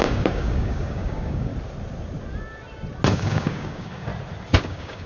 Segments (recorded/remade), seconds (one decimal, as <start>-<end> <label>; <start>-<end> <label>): 0.0-1.5 remade; 1.5-3.1 recorded; 3.1-4.1 remade; 4.1-4.6 recorded; 4.6-5.1 remade